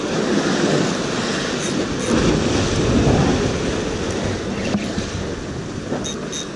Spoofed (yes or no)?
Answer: no